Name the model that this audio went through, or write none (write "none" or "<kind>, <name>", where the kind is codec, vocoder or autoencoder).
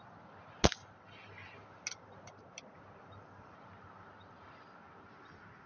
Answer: none